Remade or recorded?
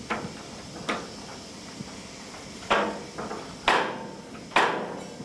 recorded